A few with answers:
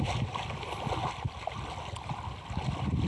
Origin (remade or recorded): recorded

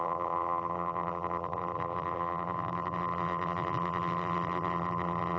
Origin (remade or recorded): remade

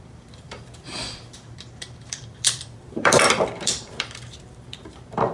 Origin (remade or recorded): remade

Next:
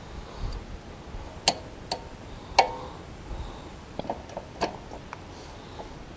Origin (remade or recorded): recorded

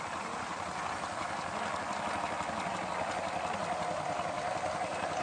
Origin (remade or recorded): recorded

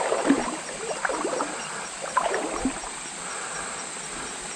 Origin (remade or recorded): recorded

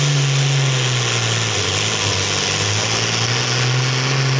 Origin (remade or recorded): recorded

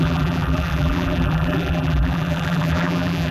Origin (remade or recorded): remade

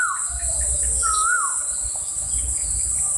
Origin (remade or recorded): recorded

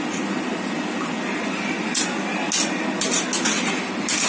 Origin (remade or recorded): recorded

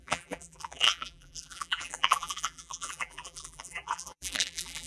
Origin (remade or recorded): remade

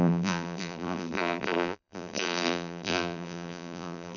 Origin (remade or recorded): remade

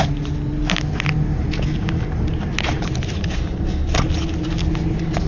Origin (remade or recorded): recorded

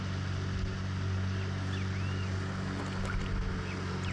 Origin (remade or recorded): recorded